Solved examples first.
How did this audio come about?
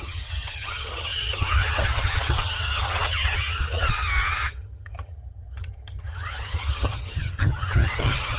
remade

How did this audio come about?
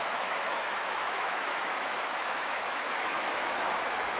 remade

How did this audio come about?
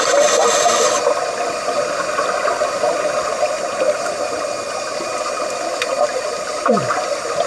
recorded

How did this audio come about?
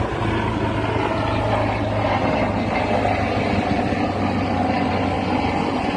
recorded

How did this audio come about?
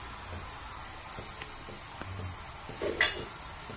recorded